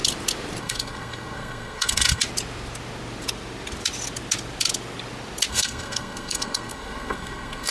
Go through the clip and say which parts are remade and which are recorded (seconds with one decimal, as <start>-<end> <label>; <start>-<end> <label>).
0.0-0.6 recorded; 0.6-2.2 remade; 2.2-5.5 recorded; 5.5-7.7 remade